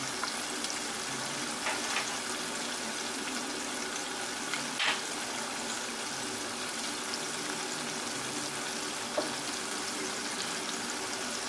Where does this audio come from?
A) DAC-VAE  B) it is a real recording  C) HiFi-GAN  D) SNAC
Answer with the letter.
B